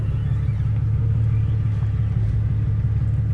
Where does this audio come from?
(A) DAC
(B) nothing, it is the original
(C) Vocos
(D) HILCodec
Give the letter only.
B